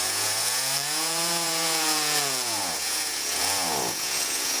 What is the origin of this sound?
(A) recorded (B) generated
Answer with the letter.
B